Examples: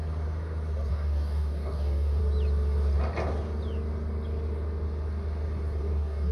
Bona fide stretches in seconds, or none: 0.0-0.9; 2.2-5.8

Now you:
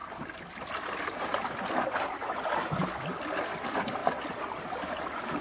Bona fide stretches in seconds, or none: 0.0-5.4

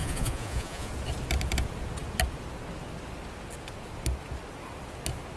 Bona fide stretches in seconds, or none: 0.9-5.4